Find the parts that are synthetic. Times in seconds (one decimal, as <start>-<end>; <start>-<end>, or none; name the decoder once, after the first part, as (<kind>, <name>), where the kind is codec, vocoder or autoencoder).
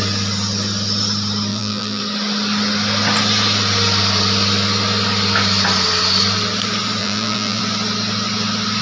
1.5-2.0 (vocoder, BigVGAN v2); 7.0-7.6